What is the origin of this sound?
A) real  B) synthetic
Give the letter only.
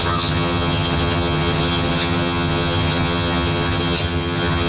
B